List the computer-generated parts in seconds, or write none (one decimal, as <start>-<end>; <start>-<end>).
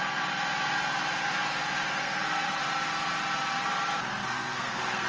2.0-2.6; 4.2-5.1